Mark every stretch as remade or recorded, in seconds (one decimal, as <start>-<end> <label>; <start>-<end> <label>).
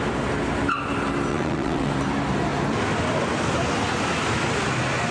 0.0-1.3 recorded; 1.3-1.9 remade; 1.9-5.1 recorded